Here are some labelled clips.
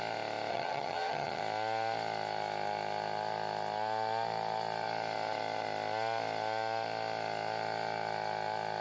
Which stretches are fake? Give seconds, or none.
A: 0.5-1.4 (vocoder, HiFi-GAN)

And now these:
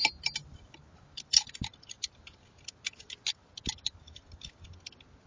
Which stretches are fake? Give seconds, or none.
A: none

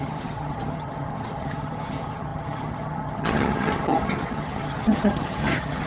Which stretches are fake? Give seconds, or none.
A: 0.0-5.9 (vocoder, HiFi-GAN)

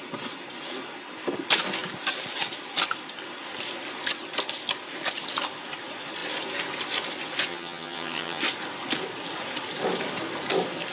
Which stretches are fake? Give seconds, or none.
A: 7.5-8.4 (vocoder, HiFi-GAN)

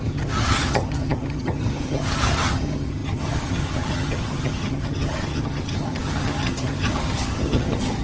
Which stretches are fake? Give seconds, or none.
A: 0.0-8.0 (vocoder, HiFi-GAN)

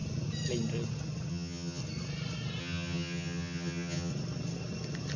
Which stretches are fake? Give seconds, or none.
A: 1.3-1.8 (vocoder, HiFi-GAN); 2.6-4.1